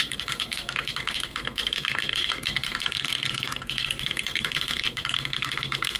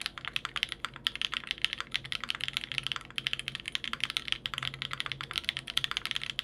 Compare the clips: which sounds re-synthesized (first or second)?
first